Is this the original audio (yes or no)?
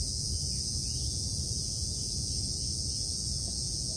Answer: no